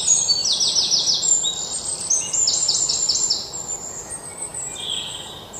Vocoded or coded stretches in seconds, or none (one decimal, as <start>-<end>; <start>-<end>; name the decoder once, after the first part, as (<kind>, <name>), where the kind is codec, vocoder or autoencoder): none